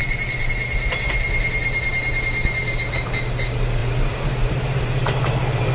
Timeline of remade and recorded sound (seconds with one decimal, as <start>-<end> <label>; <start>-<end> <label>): 0.0-0.5 remade; 0.5-1.6 recorded; 1.6-2.8 remade; 2.8-3.8 recorded; 3.8-5.7 remade